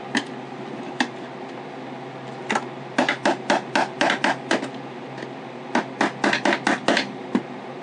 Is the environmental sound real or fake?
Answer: real